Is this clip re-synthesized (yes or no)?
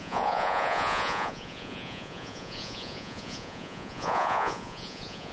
yes